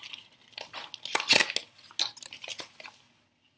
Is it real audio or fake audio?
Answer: real